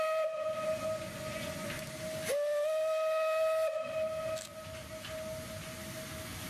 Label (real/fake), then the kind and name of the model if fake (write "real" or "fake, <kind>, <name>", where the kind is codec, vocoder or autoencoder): real